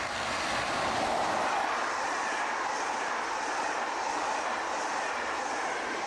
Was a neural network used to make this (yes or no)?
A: no